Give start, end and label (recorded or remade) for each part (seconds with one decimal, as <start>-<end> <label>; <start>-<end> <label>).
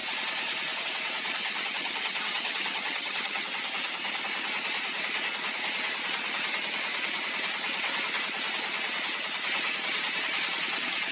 0.0-1.4 recorded; 1.4-3.5 remade; 3.5-11.1 recorded